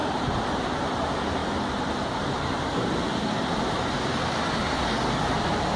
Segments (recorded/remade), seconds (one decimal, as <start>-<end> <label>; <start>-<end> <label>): 0.0-0.5 remade; 0.5-5.8 recorded